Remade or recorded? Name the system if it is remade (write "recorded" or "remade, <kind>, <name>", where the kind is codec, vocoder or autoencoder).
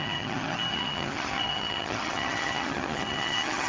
remade, vocoder, HiFi-GAN